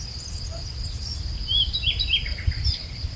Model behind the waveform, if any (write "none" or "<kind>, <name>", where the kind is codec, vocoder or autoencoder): none